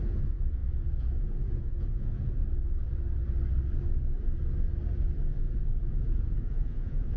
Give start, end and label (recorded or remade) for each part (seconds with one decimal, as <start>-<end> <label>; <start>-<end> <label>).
0.0-2.4 remade; 2.4-5.9 recorded; 5.9-7.2 remade

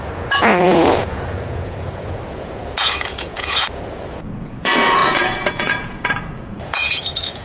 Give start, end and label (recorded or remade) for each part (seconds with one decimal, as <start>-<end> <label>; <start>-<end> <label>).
0.0-7.4 remade

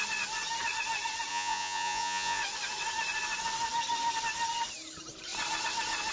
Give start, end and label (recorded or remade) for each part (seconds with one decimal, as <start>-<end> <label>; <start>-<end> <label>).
0.0-1.3 recorded; 1.3-2.4 remade; 2.4-6.1 recorded

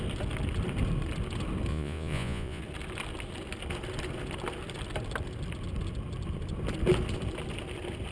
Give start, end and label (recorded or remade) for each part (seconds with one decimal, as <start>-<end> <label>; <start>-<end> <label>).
0.0-1.7 recorded; 1.7-2.6 remade; 2.6-8.1 recorded

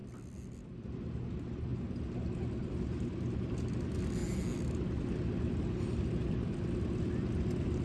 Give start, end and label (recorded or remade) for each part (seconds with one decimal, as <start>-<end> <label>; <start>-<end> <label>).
0.0-7.8 recorded

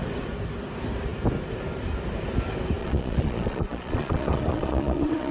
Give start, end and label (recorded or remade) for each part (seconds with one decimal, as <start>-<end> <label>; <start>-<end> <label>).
0.0-2.8 recorded; 2.8-5.3 remade

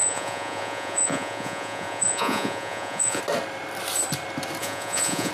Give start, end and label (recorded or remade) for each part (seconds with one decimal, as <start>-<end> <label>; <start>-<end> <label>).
0.0-3.2 remade; 3.2-4.6 recorded; 4.6-5.3 remade